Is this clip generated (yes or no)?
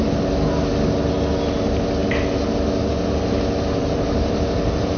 no